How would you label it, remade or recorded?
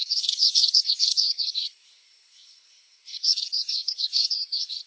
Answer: remade